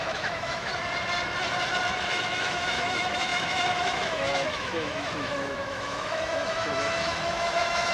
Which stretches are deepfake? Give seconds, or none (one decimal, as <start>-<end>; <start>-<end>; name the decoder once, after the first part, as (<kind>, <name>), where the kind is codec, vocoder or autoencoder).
0.0-0.7 (autoencoder, DAC-VAE); 2.1-7.9